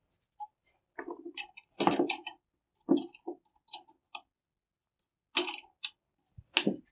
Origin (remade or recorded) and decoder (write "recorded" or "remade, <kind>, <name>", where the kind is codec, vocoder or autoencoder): recorded